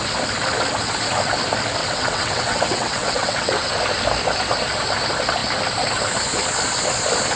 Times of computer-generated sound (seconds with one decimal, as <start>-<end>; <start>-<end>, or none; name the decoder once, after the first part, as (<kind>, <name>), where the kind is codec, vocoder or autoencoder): 1.8-3.8 (vocoder, WaveNeXt)